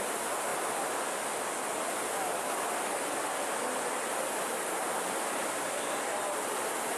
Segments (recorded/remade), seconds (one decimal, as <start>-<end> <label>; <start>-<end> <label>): 0.0-7.0 recorded